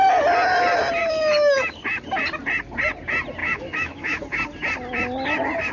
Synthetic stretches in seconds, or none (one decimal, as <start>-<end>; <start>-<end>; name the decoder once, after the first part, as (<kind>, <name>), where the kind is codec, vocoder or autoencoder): 1.0-1.8 (autoencoder, DAC-VAE); 3.4-4.2